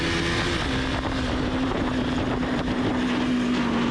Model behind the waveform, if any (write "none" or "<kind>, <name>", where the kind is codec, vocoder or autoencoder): none